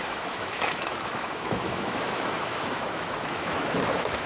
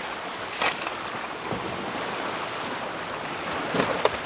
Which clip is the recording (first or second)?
second